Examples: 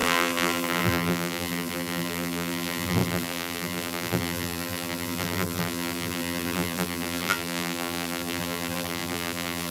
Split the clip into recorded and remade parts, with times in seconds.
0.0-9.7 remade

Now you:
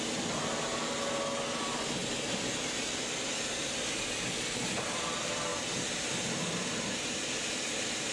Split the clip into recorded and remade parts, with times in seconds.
0.0-0.7 remade; 0.7-1.6 recorded; 1.6-2.0 remade; 2.0-2.8 recorded; 2.8-8.1 remade

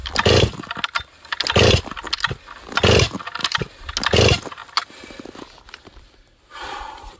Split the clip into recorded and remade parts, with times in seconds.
0.0-3.4 recorded; 3.4-3.9 remade; 3.9-7.2 recorded

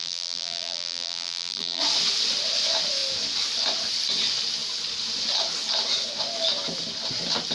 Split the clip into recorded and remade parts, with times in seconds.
0.0-1.8 remade; 1.8-7.5 recorded